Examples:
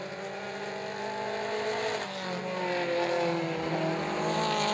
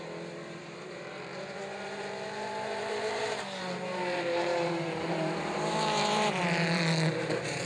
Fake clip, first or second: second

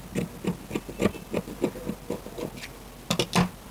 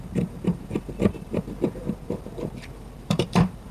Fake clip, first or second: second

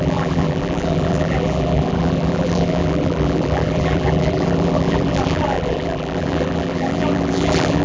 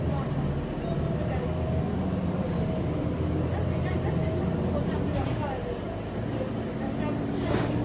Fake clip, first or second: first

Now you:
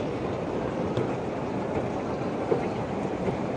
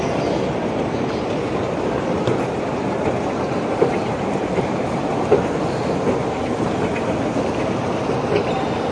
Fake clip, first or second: second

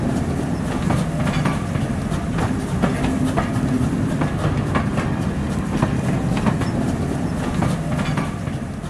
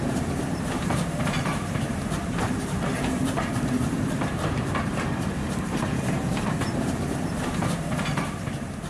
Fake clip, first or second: second